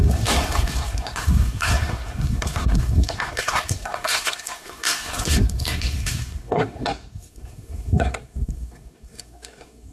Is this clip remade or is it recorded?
remade